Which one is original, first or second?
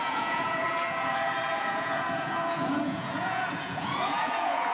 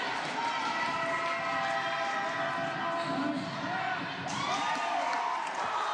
second